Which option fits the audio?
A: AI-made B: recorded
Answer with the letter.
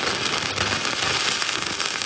B